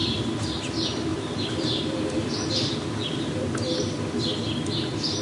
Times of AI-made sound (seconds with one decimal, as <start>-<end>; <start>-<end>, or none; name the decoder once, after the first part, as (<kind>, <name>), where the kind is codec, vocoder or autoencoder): 0.0-0.5 (vocoder, BigVGAN v2); 1.1-4.2